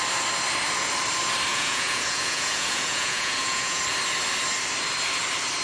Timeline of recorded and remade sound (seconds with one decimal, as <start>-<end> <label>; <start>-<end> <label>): 0.0-1.5 recorded; 1.5-3.8 remade; 3.8-5.6 recorded